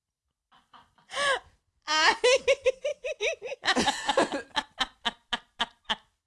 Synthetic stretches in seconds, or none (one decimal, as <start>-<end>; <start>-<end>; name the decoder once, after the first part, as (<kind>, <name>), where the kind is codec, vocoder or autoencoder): 2.9-5.8 (vocoder, BigVGAN v2)

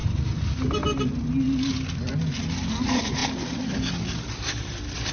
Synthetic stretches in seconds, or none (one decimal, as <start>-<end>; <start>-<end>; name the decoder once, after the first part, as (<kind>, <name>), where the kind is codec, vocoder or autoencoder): none

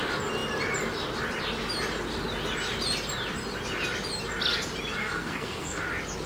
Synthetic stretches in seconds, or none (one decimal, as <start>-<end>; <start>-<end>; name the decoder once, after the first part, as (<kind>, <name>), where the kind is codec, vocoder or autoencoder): 5.0-5.8 (codec, SNAC)

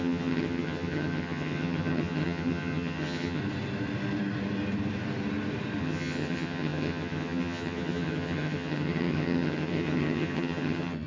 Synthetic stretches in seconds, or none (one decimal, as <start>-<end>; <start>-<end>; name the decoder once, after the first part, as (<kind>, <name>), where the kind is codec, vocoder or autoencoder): 0.0-3.4 (vocoder, HiFi-GAN); 5.8-11.1

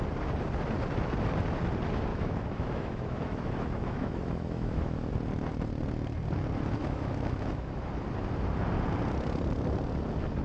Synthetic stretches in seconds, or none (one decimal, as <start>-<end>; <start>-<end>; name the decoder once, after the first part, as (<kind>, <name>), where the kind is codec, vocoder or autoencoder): 2.1-5.1 (autoencoder, DAC-VAE); 6.8-7.9

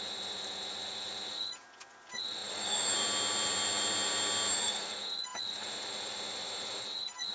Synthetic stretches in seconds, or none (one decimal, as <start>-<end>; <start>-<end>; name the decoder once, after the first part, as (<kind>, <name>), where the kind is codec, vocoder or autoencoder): 5.3-6.2 (vocoder, BigVGAN v2)